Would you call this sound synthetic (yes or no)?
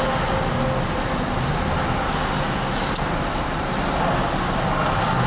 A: no